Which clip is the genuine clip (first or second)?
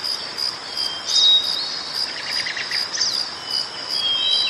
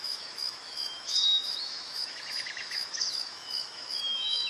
first